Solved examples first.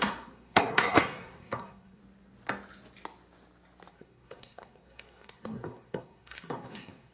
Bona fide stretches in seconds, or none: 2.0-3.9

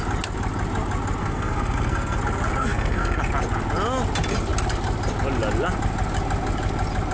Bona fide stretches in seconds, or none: 0.0-1.2; 2.2-2.6; 3.2-7.1

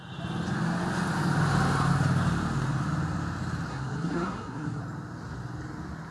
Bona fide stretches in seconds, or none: 0.0-3.7; 4.8-6.1

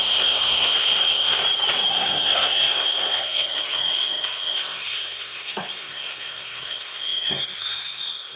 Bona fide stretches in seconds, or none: 1.4-1.9

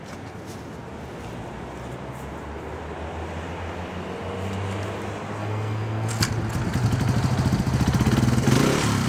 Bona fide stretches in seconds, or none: 0.0-5.4; 6.1-9.1